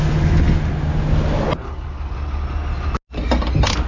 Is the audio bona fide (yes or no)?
yes